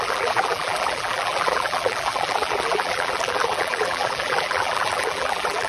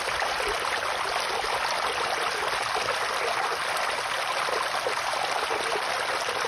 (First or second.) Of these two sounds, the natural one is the second